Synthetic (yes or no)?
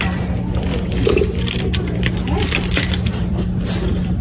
yes